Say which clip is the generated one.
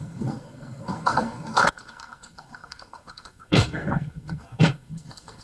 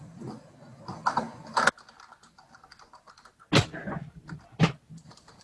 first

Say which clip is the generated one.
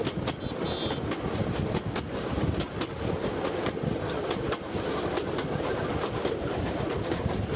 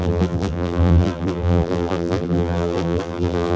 second